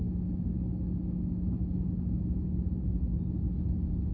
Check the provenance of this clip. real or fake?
real